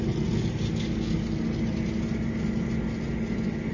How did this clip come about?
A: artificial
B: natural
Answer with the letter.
B